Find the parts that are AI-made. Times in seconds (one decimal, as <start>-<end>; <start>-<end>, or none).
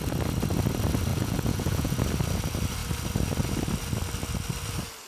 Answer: 1.1-2.0